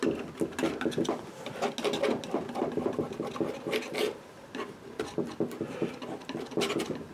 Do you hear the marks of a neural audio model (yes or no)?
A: no